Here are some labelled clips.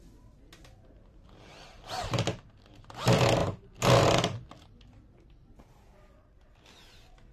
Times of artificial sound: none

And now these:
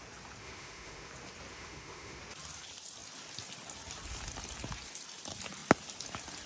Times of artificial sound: 0.4-1.1; 1.5-2.2